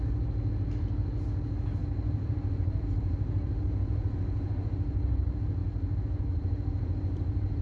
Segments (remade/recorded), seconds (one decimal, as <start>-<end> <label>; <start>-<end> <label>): 0.0-1.8 recorded; 1.8-4.7 remade; 4.7-5.6 recorded; 5.6-7.6 remade